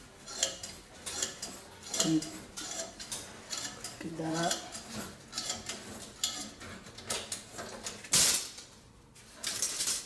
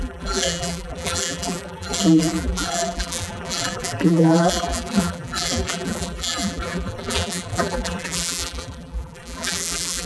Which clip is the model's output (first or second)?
second